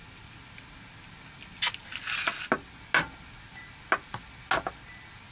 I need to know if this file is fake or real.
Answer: real